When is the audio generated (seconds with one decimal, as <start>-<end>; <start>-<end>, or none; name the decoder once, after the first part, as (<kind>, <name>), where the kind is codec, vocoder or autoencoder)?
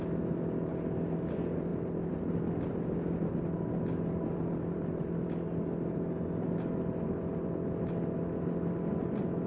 none